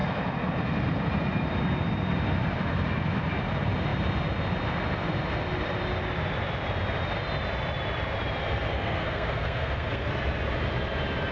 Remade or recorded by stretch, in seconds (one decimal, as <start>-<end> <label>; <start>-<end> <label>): 0.0-8.7 recorded; 8.7-10.1 remade; 10.1-11.3 recorded